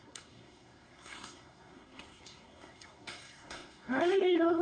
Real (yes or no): no